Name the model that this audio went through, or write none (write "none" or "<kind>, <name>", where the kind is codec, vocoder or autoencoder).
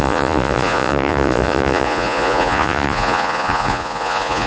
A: vocoder, Vocos